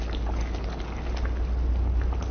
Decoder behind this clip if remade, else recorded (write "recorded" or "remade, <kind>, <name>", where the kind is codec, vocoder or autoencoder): recorded